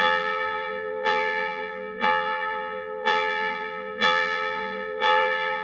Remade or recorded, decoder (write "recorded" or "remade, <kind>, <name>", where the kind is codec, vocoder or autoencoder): remade, vocoder, BigVGAN v2